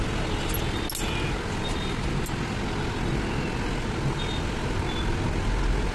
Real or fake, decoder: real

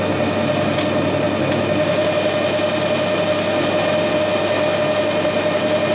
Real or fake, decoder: real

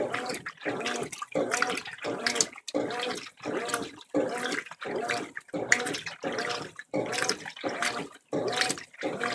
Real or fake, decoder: real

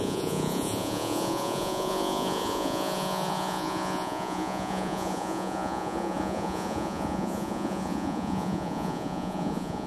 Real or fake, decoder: fake, vocoder, Vocos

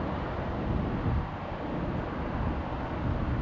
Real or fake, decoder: real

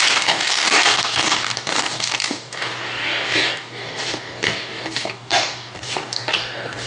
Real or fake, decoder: fake, codec, DAC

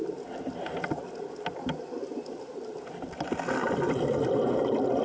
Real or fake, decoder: real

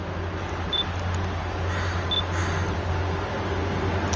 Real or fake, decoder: real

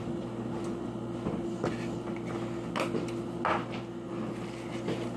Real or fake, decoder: real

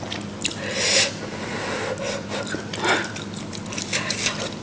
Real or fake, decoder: real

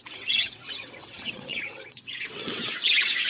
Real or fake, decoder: fake, vocoder, WaveNeXt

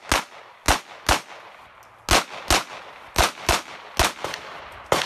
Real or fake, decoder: real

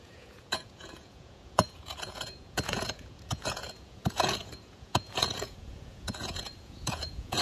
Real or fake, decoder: fake, vocoder, Vocos